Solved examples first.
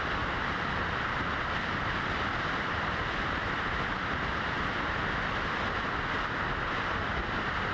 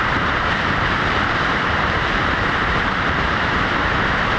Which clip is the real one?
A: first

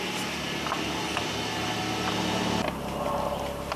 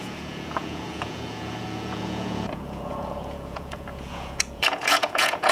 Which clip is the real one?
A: first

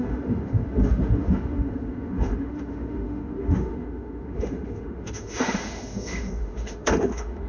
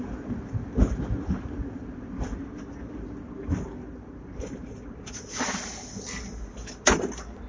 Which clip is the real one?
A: second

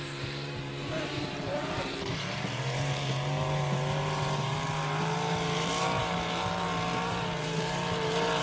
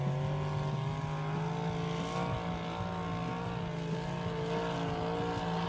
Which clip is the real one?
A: second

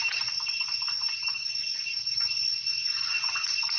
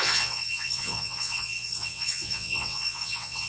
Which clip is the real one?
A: first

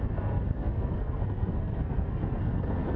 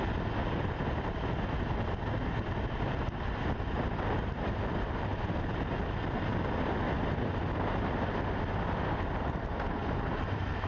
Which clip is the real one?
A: second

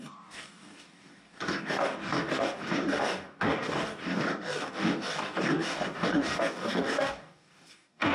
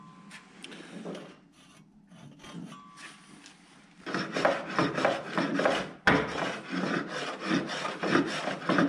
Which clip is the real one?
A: second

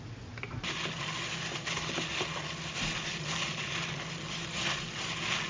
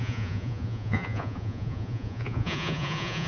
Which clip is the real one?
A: first